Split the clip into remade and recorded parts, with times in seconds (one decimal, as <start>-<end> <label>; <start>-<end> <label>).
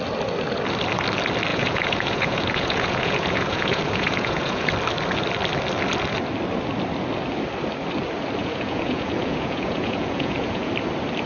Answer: 0.0-1.5 recorded; 1.5-4.7 remade; 4.7-8.4 recorded; 8.4-10.7 remade; 10.7-11.3 recorded